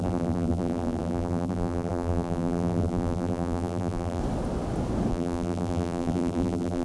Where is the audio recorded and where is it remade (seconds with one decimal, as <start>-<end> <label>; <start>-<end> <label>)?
0.0-4.2 remade; 4.2-5.1 recorded; 5.1-6.8 remade